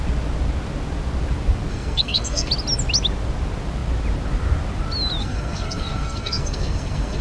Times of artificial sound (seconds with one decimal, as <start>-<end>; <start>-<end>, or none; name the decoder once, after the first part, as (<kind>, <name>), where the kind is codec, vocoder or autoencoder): 1.7-2.5 (codec, SNAC); 5.2-7.2